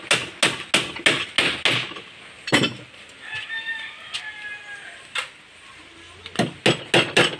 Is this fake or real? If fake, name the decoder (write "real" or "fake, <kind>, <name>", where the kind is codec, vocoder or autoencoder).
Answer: real